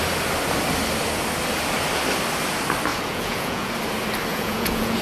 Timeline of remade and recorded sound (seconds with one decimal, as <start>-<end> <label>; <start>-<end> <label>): 0.0-2.9 recorded; 2.9-3.7 remade; 3.7-4.3 recorded; 4.3-5.0 remade

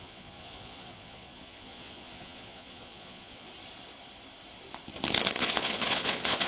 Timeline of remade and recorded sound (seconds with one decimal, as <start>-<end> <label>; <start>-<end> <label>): 0.0-3.5 remade; 3.5-5.4 recorded; 5.4-6.5 remade

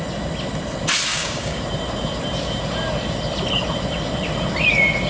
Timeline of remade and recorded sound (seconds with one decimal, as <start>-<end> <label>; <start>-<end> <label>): 0.0-1.1 recorded; 1.1-1.6 remade; 1.6-5.1 recorded

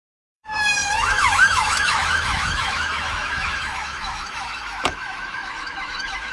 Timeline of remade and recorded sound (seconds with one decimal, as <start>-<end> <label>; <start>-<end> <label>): 0.0-6.3 remade

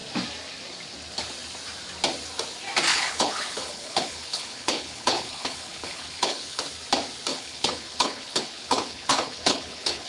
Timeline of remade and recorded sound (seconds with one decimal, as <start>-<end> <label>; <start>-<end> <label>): 0.0-2.9 recorded; 2.9-6.6 remade; 6.6-7.3 recorded; 7.3-10.1 remade

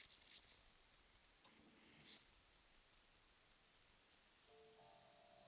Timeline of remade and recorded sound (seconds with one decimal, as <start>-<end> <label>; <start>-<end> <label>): 0.0-5.5 recorded